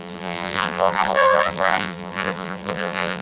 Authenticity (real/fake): fake